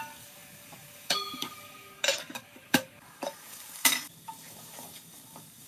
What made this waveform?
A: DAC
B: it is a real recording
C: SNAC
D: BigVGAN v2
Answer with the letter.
A